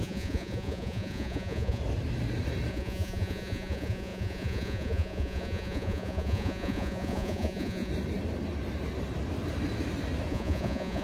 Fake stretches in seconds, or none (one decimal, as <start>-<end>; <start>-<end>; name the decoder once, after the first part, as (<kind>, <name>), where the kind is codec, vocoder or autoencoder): 0.0-1.8 (vocoder, Vocos); 2.7-7.9; 10.3-11.0